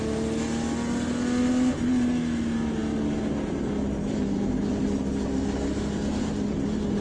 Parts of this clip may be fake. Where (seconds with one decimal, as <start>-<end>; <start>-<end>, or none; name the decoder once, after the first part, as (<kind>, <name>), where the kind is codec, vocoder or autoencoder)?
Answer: none